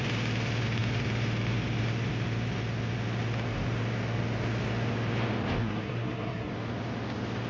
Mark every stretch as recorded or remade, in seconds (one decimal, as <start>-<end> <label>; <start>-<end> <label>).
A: 0.0-5.6 recorded; 5.6-6.5 remade; 6.5-7.5 recorded